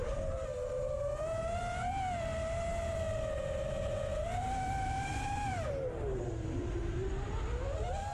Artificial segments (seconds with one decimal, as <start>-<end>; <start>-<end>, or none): 4.1-5.7